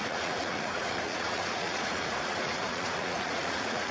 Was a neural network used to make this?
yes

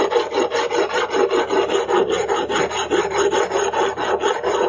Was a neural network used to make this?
no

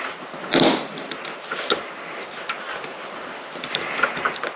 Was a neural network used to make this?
no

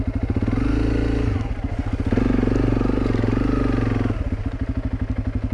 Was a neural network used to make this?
no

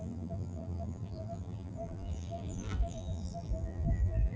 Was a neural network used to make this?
yes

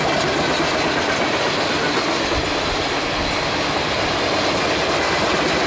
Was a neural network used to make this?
no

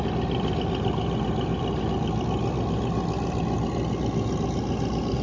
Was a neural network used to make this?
no